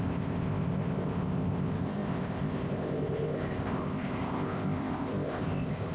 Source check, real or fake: fake